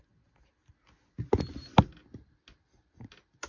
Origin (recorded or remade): recorded